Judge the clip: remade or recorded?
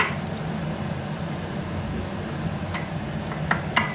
recorded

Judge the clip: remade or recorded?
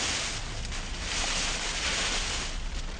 recorded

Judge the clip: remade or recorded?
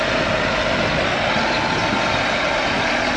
recorded